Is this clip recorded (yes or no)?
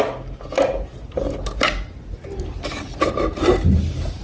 yes